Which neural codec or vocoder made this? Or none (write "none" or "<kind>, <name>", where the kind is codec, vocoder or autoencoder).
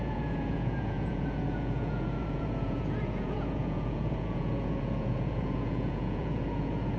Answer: vocoder, Vocos